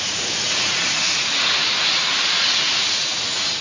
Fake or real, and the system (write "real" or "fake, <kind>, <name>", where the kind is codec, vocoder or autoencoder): fake, vocoder, Vocos